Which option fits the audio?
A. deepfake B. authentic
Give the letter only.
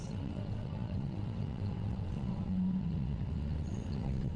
A